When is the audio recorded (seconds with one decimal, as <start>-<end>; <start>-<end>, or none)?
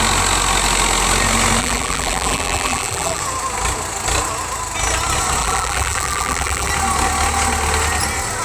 0.0-1.6; 3.2-5.4; 6.7-8.4